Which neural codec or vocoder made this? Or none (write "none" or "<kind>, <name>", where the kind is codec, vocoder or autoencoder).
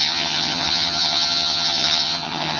vocoder, HiFi-GAN